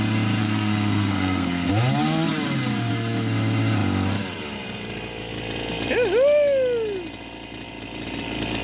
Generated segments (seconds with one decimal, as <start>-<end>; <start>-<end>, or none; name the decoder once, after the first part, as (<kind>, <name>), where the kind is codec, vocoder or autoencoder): 0.4-1.7 (codec, SNAC)